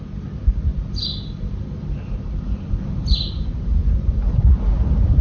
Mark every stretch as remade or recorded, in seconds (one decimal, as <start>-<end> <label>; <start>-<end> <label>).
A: 0.0-0.7 recorded; 0.7-3.8 remade; 3.8-5.2 recorded